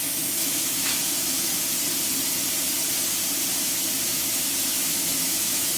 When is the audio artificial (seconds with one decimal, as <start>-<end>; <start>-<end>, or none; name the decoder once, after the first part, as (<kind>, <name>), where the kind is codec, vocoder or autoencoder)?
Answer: 0.0-1.5 (autoencoder, DAC-VAE); 4.1-5.8